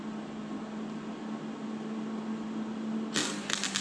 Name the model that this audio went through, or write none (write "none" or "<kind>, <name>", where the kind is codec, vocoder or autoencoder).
none